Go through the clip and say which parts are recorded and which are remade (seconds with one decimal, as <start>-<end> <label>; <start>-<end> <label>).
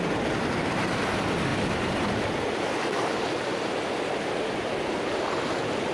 0.0-5.9 recorded